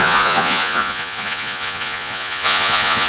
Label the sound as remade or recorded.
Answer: remade